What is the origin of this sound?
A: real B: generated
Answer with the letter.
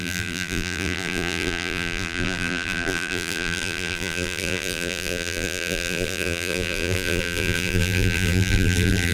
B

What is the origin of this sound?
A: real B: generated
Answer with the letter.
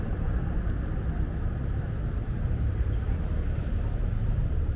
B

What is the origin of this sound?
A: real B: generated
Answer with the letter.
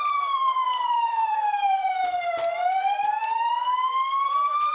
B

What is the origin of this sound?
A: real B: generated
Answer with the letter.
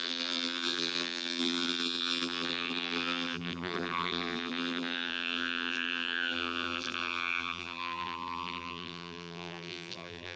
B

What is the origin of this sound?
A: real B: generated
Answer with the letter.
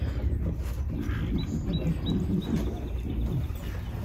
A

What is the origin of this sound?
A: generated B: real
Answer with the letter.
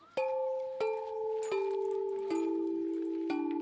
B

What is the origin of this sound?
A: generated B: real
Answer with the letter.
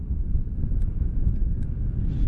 B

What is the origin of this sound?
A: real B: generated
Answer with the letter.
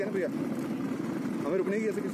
A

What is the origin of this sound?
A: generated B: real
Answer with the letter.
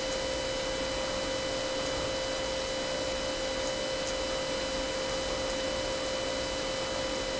B